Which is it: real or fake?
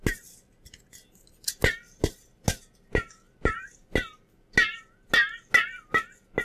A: real